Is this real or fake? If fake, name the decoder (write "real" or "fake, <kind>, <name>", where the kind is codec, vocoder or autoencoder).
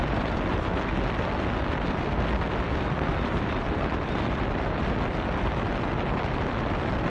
real